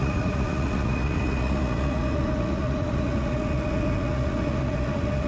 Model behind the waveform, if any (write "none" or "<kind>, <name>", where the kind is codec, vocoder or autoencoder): vocoder, Vocos